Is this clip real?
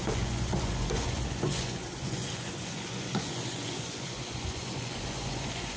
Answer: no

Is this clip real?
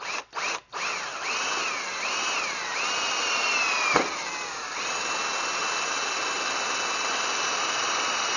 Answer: yes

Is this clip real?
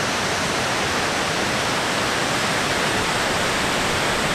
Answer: yes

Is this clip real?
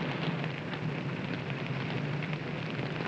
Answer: yes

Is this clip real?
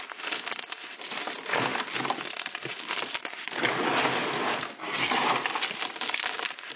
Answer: yes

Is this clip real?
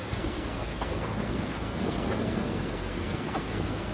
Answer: no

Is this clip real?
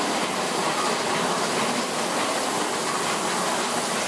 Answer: yes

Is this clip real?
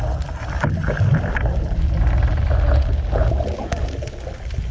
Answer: yes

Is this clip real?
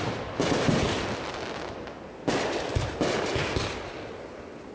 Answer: yes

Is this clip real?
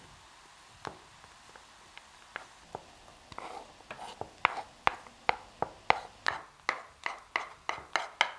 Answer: yes